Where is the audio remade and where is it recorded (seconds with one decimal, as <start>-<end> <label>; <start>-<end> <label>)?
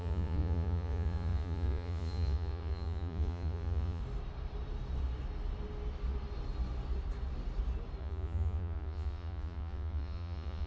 0.0-4.0 remade; 4.0-8.0 recorded; 8.0-10.7 remade